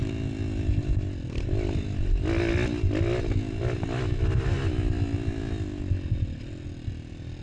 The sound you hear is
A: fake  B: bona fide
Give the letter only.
B